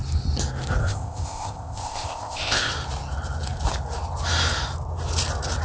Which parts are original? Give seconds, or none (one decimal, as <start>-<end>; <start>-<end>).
0.0-0.8; 2.7-5.6